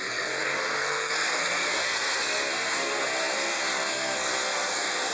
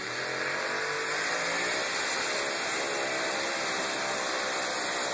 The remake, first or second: first